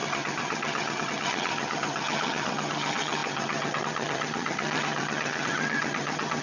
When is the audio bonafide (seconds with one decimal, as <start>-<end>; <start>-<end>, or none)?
none